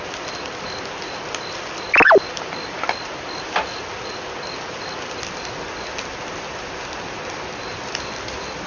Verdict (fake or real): real